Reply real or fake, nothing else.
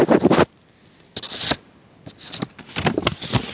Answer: real